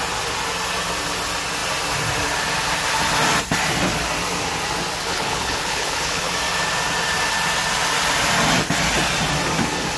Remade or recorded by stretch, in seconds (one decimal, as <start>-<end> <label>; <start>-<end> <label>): 0.0-5.0 recorded; 5.0-6.3 remade; 6.3-10.0 recorded